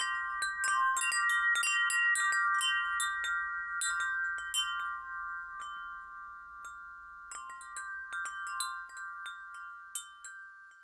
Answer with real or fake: real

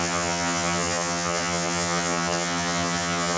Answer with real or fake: fake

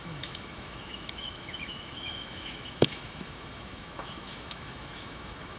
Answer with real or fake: fake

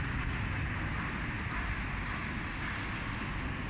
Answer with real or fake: real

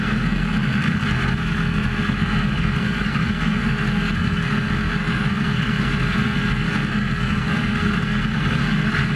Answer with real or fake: fake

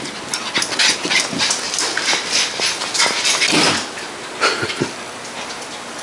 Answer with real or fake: real